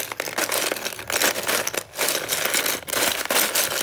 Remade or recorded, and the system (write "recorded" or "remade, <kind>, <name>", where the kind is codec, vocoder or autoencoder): recorded